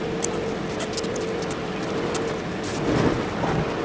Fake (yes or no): no